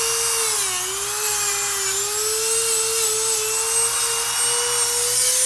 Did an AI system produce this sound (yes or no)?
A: no